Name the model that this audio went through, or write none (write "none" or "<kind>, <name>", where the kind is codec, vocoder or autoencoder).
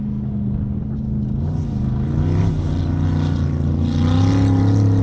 none